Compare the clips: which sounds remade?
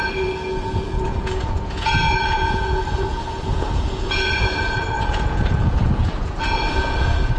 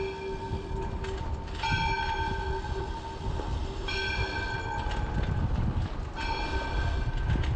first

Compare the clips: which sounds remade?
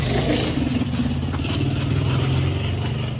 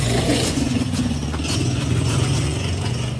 second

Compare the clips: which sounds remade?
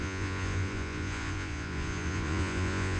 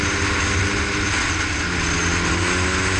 first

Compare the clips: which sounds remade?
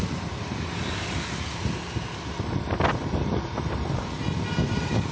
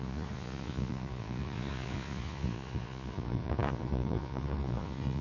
second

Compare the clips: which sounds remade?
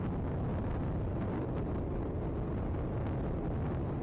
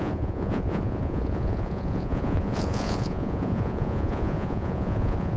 second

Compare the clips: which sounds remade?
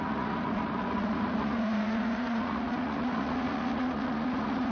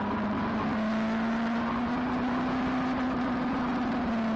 first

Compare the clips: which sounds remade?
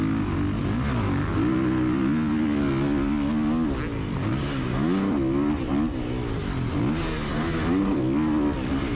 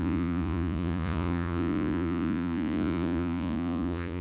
second